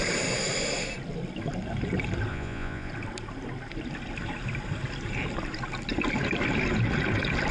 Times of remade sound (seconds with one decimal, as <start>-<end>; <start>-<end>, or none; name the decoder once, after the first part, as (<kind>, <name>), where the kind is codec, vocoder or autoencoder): 2.3-2.9 (vocoder, Vocos)